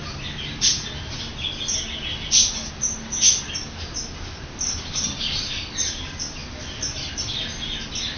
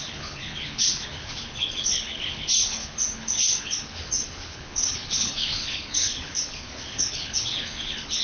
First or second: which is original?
first